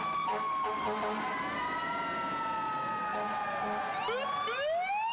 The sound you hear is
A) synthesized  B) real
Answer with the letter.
B